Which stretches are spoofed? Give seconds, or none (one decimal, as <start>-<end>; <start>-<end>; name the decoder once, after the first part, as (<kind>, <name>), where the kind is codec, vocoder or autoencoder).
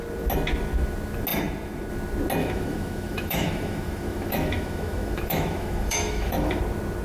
2.4-6.6 (autoencoder, DAC-VAE)